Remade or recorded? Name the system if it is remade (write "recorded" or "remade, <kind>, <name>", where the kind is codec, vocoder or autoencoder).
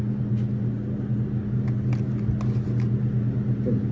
recorded